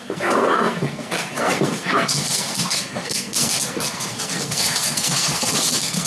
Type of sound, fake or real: fake